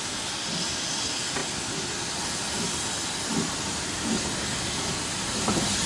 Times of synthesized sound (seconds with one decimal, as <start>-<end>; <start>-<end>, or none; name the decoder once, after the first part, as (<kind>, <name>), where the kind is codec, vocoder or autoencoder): none